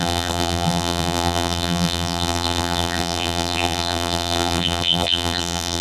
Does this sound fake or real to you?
fake